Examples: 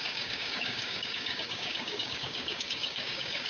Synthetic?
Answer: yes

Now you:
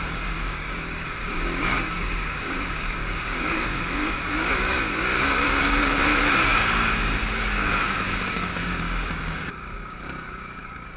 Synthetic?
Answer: yes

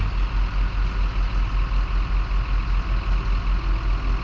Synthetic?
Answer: no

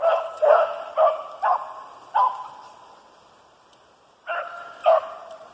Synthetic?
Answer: no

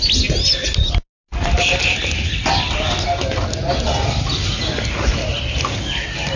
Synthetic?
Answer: no